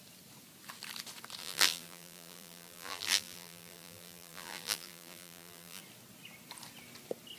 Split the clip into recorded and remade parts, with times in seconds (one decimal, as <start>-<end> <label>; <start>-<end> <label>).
0.0-1.4 recorded; 1.4-5.8 remade; 5.8-7.4 recorded

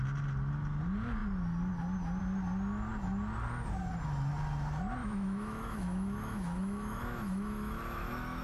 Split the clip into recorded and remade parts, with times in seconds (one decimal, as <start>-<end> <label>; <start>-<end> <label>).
0.0-5.0 recorded; 5.0-8.4 remade

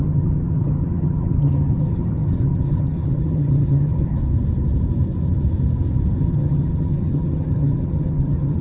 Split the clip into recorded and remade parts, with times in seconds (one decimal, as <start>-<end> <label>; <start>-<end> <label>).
0.0-4.2 remade; 4.2-6.2 recorded; 6.2-8.6 remade

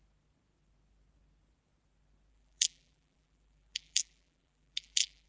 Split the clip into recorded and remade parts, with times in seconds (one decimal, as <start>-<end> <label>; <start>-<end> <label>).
0.0-2.3 recorded; 2.3-5.3 remade